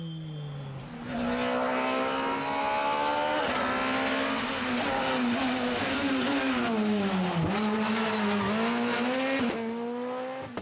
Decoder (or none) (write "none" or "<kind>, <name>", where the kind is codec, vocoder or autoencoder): none